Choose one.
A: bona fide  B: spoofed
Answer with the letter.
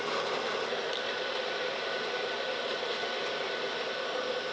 A